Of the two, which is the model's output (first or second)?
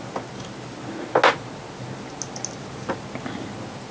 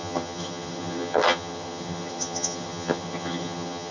second